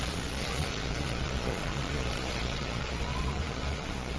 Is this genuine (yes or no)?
no